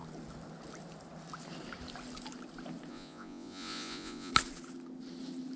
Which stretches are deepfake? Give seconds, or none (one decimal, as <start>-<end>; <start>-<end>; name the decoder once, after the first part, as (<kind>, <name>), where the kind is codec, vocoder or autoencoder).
2.9-4.3 (vocoder, Vocos)